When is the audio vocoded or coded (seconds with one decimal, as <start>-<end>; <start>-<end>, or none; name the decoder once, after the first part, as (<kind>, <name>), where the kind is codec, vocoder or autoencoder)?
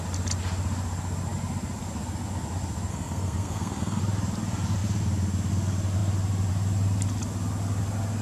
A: 2.9-4.0 (codec, SNAC)